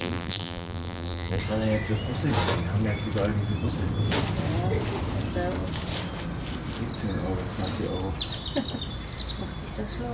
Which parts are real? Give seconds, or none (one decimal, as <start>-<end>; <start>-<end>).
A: 1.4-10.1